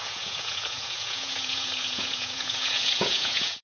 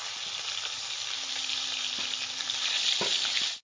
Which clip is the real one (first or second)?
second